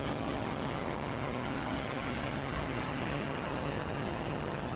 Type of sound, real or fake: fake